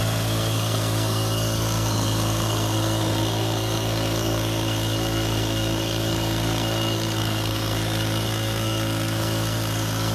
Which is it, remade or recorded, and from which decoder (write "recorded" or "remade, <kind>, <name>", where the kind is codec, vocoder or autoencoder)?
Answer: remade, codec, SNAC